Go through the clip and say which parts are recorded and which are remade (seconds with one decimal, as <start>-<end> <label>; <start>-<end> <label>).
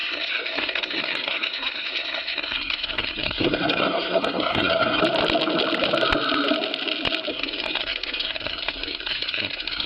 0.0-5.0 remade; 5.0-7.3 recorded; 7.3-9.9 remade